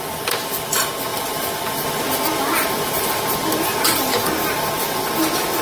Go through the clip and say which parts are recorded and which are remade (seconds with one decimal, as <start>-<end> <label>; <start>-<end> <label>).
0.0-1.1 recorded; 1.1-1.6 remade; 1.6-5.6 recorded